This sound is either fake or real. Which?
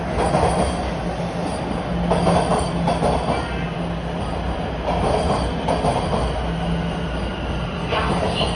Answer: real